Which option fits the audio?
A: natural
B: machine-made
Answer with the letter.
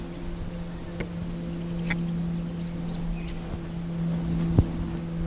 A